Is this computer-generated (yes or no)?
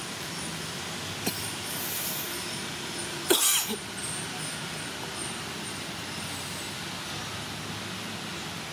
no